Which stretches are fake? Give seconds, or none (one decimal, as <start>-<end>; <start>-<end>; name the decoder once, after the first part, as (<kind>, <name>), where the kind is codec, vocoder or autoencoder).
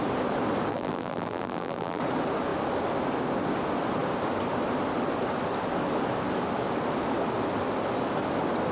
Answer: 0.7-2.0 (vocoder, BigVGAN v2)